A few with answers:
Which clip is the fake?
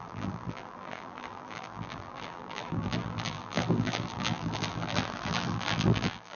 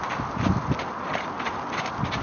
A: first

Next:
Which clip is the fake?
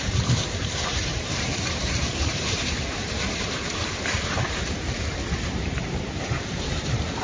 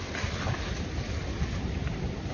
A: first